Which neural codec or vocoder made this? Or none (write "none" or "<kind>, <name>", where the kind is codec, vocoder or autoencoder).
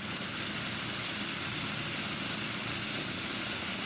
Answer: none